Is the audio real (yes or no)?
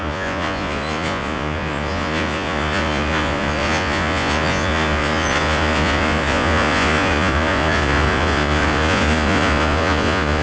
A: no